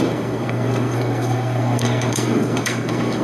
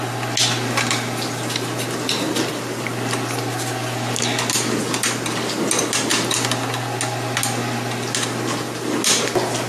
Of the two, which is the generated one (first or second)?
first